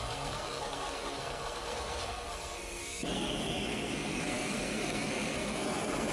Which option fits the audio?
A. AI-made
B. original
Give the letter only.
A